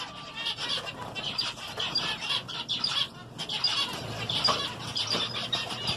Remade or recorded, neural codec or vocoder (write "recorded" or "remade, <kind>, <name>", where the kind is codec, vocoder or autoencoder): recorded